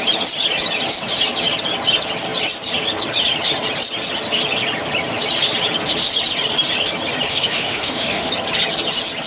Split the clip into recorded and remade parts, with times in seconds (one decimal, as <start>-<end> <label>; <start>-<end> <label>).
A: 0.0-7.3 recorded; 7.3-8.3 remade; 8.3-9.3 recorded